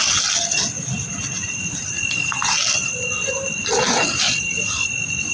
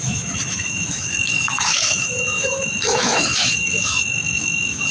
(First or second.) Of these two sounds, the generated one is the second